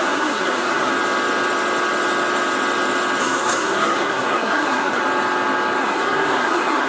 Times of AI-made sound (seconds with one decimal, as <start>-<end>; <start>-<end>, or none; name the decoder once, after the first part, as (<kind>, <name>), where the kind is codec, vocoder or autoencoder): 0.0-0.9 (codec, SNAC); 3.2-5.0; 5.8-6.9